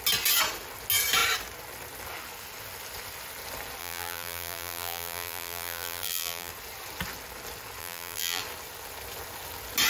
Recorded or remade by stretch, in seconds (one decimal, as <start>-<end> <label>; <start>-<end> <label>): 0.0-3.8 recorded; 3.8-6.5 remade; 6.5-7.8 recorded; 7.8-8.4 remade; 8.4-9.9 recorded